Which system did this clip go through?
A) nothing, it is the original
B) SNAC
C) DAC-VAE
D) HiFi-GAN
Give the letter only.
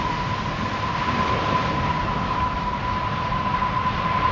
A